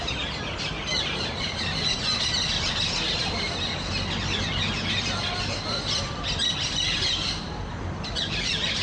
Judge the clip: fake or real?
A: real